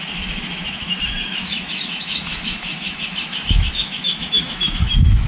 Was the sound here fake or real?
fake